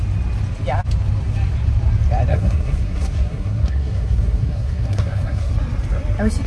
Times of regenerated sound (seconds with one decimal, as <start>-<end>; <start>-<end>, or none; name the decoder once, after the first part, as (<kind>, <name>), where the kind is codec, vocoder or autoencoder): 2.3-5.5 (codec, SNAC)